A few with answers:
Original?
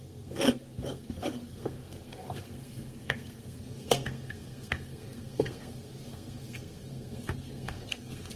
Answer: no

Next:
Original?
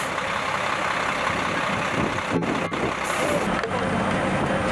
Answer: yes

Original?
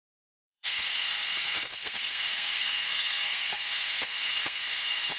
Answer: no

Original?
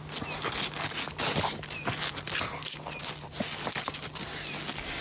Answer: yes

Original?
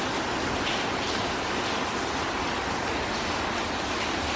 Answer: yes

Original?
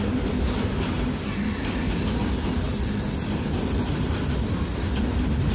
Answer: yes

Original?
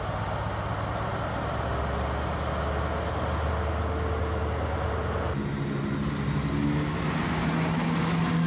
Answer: yes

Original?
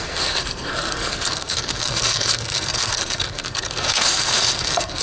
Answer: no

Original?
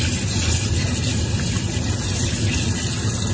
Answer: yes